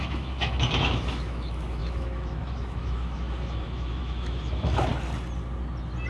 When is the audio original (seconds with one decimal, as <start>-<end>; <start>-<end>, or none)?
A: 4.9-6.1